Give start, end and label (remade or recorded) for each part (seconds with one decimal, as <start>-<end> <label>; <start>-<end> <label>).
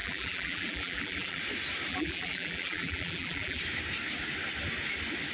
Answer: 0.0-1.4 remade; 1.4-1.9 recorded; 1.9-3.6 remade; 3.6-5.3 recorded